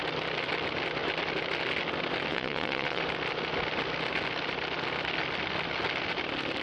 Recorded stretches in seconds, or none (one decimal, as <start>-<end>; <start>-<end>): 0.0-2.3; 3.0-6.6

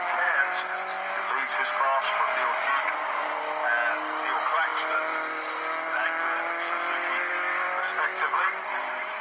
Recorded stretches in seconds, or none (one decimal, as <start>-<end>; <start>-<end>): 0.0-9.2

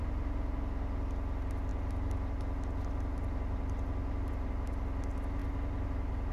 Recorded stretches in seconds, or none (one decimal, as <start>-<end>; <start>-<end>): 0.0-6.3